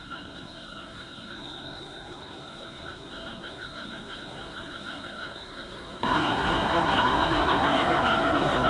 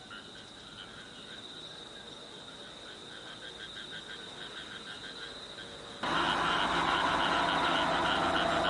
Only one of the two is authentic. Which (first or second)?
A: second